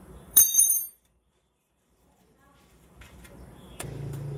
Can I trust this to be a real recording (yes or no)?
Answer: no